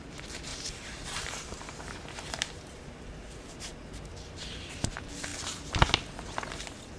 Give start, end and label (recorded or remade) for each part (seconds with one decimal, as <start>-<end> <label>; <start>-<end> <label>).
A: 0.0-0.5 recorded; 0.5-4.7 remade; 4.7-7.0 recorded